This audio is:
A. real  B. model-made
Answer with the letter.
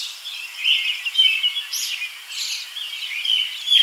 A